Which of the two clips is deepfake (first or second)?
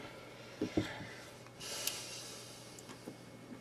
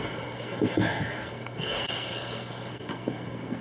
second